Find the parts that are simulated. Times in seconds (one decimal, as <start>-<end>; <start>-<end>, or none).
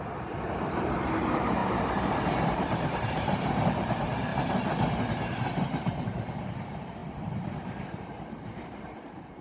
0.0-4.3; 5.1-9.4